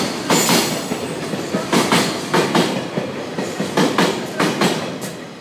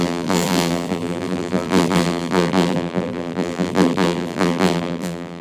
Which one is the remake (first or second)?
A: second